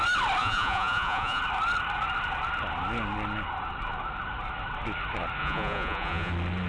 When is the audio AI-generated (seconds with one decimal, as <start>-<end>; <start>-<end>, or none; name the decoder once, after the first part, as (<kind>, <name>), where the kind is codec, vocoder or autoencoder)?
0.4-1.4 (vocoder, Vocos); 5.4-6.3